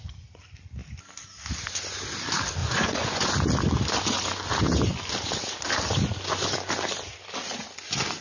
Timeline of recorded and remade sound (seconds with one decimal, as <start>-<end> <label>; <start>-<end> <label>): 0.0-2.6 recorded; 2.6-3.3 remade; 3.3-8.2 recorded